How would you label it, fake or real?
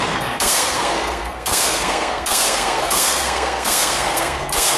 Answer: fake